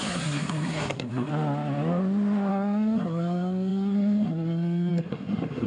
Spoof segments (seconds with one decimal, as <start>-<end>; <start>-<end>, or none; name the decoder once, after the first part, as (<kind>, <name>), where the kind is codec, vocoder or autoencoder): 0.0-1.3 (codec, SNAC); 2.5-5.7